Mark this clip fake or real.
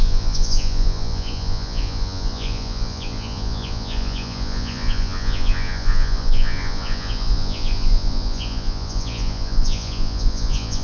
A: fake